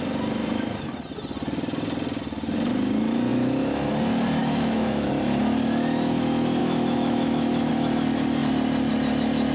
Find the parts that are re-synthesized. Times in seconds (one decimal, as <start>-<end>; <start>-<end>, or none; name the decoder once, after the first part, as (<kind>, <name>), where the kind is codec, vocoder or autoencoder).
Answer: 4.4-5.1 (autoencoder, DAC-VAE); 6.6-7.7